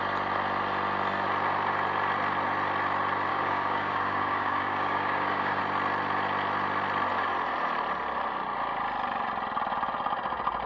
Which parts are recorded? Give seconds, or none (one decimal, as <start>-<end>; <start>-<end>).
0.0-3.3; 5.6-10.7